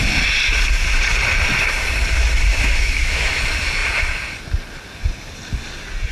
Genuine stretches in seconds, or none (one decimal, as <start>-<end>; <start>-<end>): 0.0-2.5; 3.4-6.1